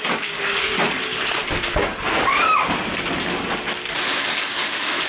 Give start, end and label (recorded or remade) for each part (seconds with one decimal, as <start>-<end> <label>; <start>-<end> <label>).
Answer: 0.0-1.4 remade; 1.4-4.2 recorded; 4.2-5.1 remade